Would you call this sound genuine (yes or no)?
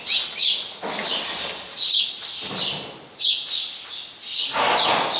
yes